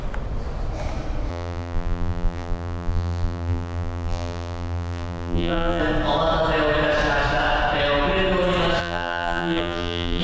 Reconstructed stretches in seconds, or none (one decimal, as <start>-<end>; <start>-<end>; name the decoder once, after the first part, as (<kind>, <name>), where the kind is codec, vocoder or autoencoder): 1.3-5.8 (vocoder, BigVGAN v2); 8.8-10.2